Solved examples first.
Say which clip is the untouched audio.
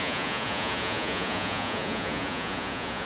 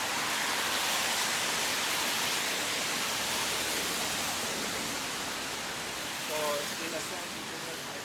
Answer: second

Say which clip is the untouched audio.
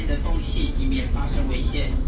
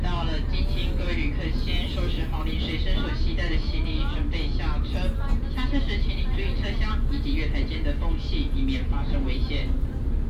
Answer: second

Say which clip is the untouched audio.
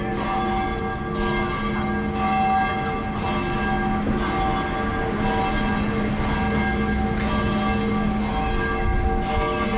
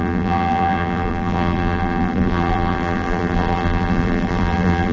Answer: first